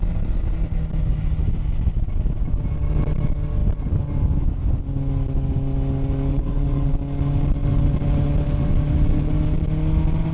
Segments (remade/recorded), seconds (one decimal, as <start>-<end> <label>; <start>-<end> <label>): 0.0-6.3 recorded; 6.3-6.9 remade; 6.9-10.3 recorded